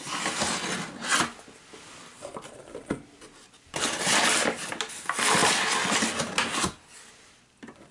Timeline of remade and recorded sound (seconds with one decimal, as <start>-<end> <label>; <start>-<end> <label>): 0.0-7.9 recorded